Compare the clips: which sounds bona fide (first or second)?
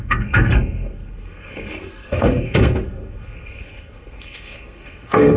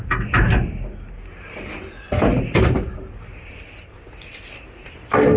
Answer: second